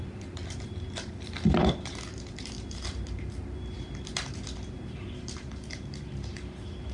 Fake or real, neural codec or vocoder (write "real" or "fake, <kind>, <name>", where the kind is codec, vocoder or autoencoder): fake, vocoder, BigVGAN v2